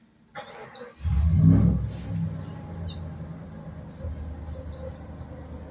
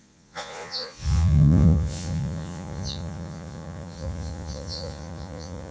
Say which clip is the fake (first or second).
second